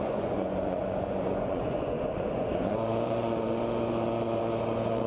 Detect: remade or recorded remade